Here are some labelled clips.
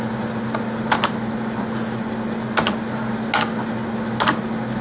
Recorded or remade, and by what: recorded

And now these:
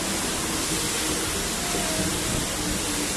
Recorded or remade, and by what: recorded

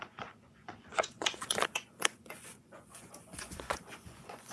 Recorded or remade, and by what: remade, vocoder, Vocos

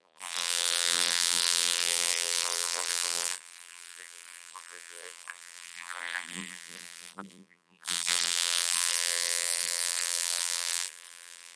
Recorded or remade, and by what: remade, vocoder, BigVGAN v2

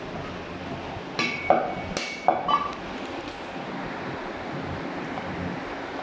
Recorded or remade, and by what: recorded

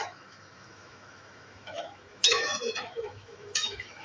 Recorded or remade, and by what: remade, autoencoder, DAC-VAE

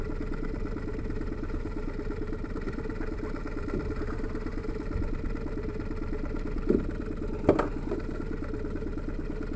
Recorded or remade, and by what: recorded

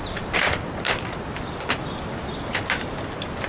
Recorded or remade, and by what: recorded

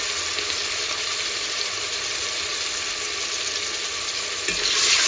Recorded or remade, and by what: recorded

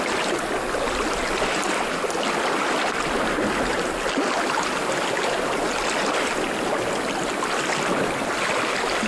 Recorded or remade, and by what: recorded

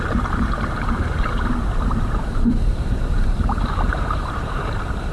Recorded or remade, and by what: remade, vocoder, BigVGAN v2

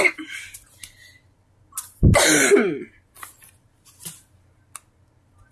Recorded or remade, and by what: recorded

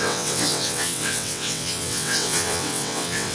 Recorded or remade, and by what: remade, vocoder, WaveNeXt